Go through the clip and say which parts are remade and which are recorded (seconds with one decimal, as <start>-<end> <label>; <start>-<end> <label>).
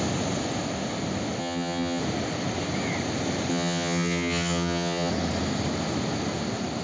0.0-1.4 recorded; 1.4-2.0 remade; 2.0-3.5 recorded; 3.5-5.1 remade; 5.1-6.8 recorded